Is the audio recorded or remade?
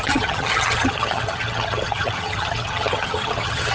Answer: remade